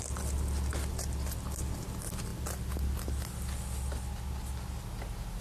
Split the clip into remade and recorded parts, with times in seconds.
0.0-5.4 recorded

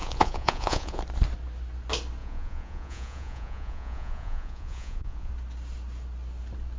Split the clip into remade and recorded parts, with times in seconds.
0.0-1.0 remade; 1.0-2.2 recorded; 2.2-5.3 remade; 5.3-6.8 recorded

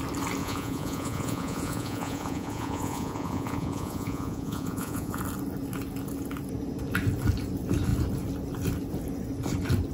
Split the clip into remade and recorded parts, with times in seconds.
0.0-0.4 recorded; 0.4-5.2 remade; 5.2-9.9 recorded

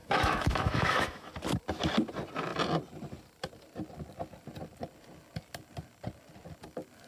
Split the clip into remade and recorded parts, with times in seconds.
0.0-1.3 remade; 1.3-7.1 recorded

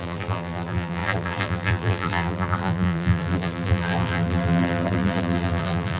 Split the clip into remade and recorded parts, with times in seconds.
0.0-6.0 remade

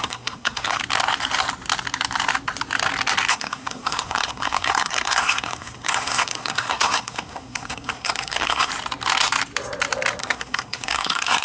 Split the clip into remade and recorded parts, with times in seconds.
0.0-0.8 remade; 0.8-3.3 recorded; 3.3-8.7 remade; 8.7-10.2 recorded; 10.2-11.4 remade

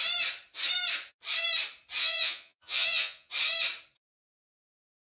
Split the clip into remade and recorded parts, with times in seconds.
0.0-2.0 recorded; 2.0-3.3 remade; 3.3-5.1 recorded

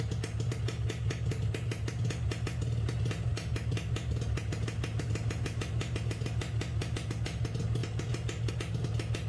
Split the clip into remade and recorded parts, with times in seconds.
0.0-9.3 recorded